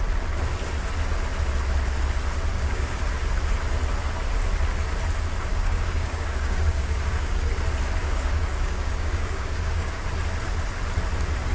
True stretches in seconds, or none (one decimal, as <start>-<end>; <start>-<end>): 0.0-2.5; 3.0-5.5; 7.5-8.0; 10.0-11.5